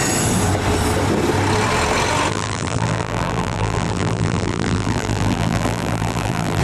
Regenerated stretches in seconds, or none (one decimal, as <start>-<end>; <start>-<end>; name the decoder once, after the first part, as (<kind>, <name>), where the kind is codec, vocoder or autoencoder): 2.3-6.6 (vocoder, BigVGAN v2)